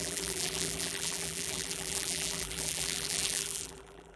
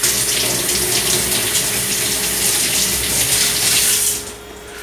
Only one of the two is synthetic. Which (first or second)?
first